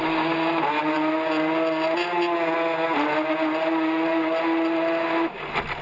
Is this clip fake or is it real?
real